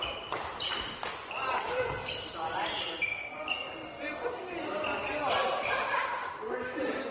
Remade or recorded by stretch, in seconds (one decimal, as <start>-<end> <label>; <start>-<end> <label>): 0.0-7.1 recorded